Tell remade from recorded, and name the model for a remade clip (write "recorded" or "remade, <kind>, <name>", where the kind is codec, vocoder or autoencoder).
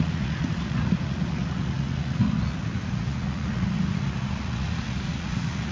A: remade, vocoder, Vocos